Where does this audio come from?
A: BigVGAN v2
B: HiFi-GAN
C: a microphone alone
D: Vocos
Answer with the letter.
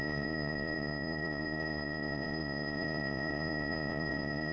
D